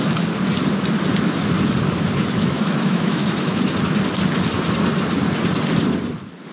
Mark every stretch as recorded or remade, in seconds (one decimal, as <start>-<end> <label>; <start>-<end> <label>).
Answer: 0.0-2.4 recorded; 2.4-3.6 remade; 3.6-6.5 recorded